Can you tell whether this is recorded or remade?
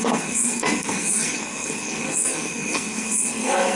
remade